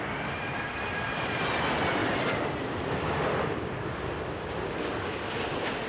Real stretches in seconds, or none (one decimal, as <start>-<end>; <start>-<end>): 0.0-5.9

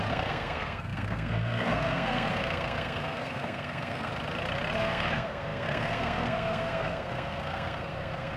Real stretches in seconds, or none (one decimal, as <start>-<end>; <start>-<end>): 4.1-4.8

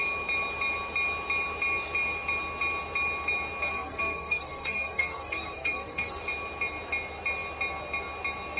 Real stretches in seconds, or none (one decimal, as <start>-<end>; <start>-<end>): 0.0-3.7; 6.2-8.6

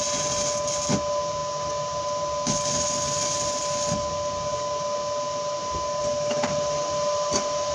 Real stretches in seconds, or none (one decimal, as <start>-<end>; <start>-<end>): 0.0-7.7

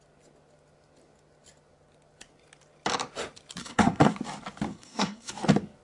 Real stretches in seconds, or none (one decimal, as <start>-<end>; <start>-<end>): 0.0-3.6; 4.1-4.7; 5.3-5.8

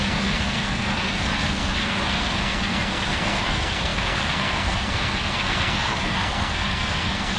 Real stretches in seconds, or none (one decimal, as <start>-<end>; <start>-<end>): none

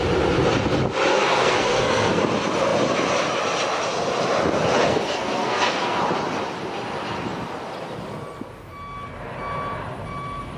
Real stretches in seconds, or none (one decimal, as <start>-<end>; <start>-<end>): 0.0-1.1; 2.2-4.8; 6.0-10.6